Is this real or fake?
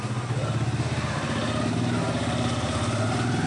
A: real